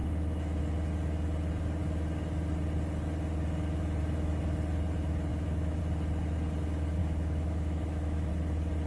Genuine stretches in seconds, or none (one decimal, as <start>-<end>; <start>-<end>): 0.6-5.3; 5.8-7.0; 8.3-8.9